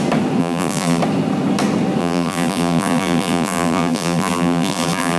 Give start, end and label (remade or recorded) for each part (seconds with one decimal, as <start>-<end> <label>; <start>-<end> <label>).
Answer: 0.0-0.4 recorded; 0.4-1.0 remade; 1.0-2.0 recorded; 2.0-5.2 remade